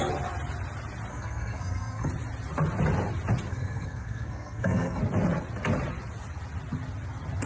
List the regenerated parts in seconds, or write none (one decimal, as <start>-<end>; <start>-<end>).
1.1-2.1; 3.5-5.0